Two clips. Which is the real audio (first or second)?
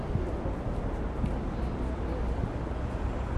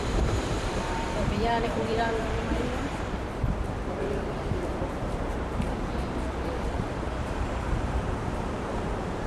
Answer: first